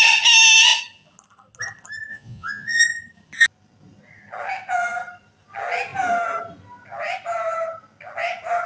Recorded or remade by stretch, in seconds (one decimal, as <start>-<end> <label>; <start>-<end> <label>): 0.0-2.1 recorded; 2.1-2.8 remade; 2.8-8.7 recorded